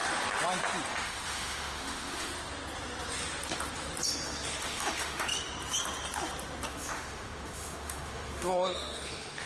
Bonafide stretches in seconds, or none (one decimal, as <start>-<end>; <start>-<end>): 0.0-0.9; 2.3-4.6; 5.3-6.7